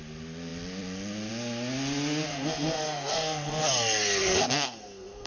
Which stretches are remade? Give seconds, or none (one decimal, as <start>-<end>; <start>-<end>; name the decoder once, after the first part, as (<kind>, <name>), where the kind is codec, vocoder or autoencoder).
2.3-3.6 (codec, SNAC); 4.2-5.3